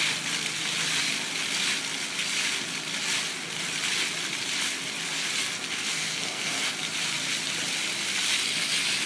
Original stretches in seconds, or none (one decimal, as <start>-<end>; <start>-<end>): 0.0-5.9; 6.7-9.1